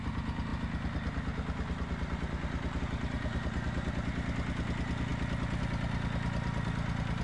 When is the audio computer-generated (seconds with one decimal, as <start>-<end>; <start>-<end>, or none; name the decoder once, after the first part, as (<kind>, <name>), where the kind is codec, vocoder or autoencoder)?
none